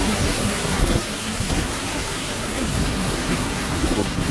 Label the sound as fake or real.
fake